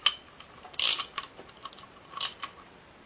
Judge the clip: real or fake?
real